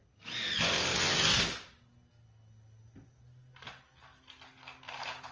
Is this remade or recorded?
recorded